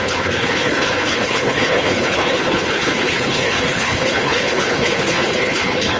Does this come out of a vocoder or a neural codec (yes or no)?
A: yes